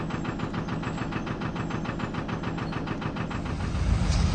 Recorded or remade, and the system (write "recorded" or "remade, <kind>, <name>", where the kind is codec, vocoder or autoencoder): recorded